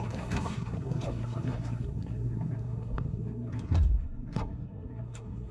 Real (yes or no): no